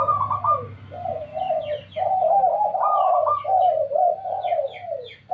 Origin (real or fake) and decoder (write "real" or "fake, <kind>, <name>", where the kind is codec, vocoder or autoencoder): real